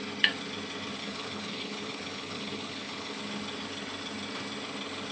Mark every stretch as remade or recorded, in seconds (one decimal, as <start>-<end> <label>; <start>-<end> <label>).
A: 0.0-1.0 recorded; 1.0-3.2 remade; 3.2-5.1 recorded